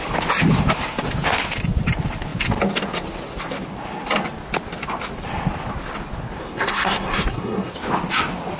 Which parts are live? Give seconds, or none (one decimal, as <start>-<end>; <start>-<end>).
0.0-6.4; 7.7-8.6